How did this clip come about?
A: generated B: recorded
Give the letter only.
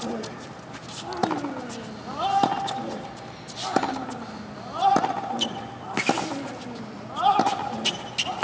B